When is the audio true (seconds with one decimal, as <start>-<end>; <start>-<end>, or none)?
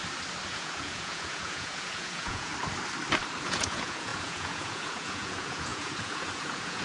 0.0-0.5; 2.5-3.4